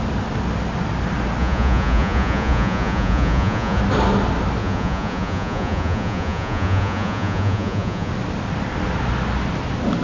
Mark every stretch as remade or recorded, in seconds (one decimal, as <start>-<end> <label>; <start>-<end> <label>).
0.0-1.4 recorded; 1.4-3.8 remade; 3.8-4.6 recorded; 4.6-8.1 remade; 8.1-10.0 recorded